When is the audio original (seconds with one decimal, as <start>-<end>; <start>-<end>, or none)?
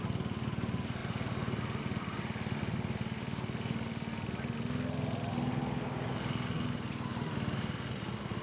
0.0-8.4